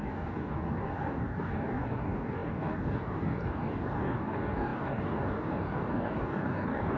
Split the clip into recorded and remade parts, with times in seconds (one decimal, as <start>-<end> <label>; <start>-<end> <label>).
0.0-7.0 remade